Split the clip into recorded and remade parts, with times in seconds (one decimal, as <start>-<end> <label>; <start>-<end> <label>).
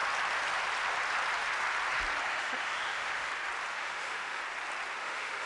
0.0-2.3 recorded; 2.3-3.3 remade; 3.3-3.7 recorded; 3.7-4.4 remade; 4.4-5.0 recorded; 5.0-5.5 remade